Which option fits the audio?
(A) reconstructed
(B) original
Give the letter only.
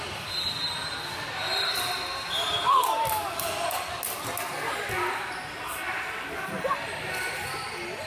B